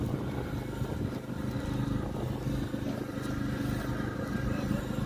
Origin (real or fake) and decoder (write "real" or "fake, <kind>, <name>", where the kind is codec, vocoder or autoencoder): real